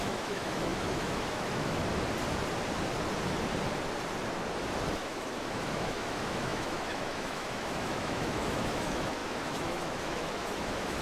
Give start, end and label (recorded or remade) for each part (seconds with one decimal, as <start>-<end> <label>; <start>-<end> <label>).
0.0-1.8 remade; 1.8-4.9 recorded; 4.9-11.0 remade